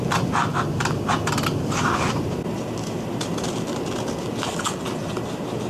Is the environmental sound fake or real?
real